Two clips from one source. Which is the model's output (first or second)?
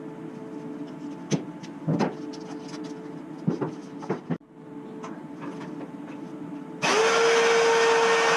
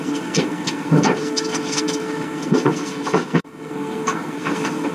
second